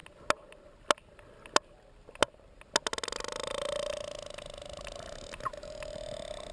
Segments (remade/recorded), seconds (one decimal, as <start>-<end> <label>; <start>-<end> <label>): 0.0-6.5 recorded